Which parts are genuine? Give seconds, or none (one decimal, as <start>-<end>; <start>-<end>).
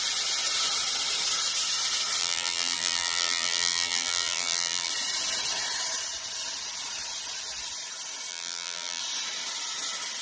0.0-2.2; 4.9-8.3; 9.0-10.2